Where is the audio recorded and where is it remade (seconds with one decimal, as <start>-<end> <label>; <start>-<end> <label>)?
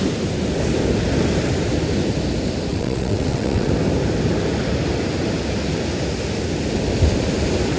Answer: 0.0-2.7 recorded; 2.7-3.7 remade; 3.7-7.8 recorded